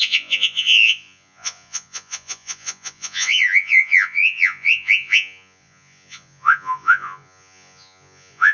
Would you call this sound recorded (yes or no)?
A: no